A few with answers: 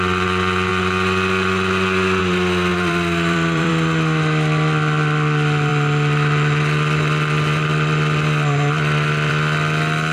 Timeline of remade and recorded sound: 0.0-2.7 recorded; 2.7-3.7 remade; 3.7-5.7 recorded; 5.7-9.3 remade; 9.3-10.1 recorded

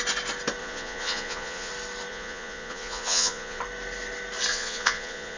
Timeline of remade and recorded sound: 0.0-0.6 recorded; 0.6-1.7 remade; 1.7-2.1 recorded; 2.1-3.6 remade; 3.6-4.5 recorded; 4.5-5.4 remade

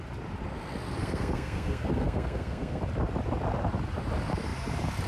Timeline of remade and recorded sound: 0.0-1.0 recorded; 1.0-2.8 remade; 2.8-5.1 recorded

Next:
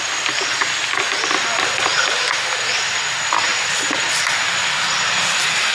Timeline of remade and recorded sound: 0.0-5.7 recorded

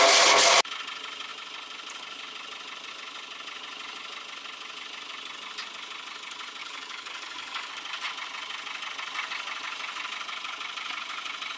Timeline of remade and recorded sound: 0.0-6.6 recorded; 6.6-7.7 remade; 7.7-11.6 recorded

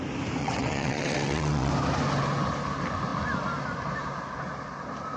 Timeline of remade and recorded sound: 0.0-0.4 recorded; 0.4-1.7 remade; 1.7-5.2 recorded